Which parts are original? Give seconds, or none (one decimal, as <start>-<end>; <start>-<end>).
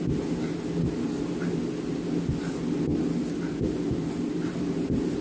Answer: 0.0-5.2